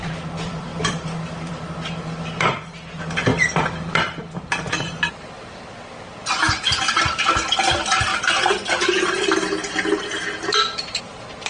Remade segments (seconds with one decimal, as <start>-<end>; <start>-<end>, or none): 0.0-3.3; 4.3-11.5